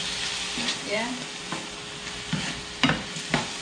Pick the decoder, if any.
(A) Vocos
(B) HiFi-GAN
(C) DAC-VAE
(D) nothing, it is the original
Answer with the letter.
D